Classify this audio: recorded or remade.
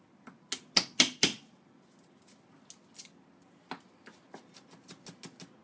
recorded